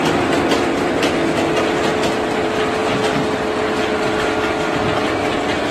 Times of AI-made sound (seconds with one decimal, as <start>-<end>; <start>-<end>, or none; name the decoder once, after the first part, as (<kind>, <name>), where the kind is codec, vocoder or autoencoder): none